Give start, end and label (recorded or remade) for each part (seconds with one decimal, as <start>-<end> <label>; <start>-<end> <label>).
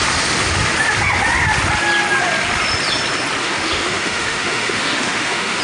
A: 0.0-3.4 recorded; 3.4-5.6 remade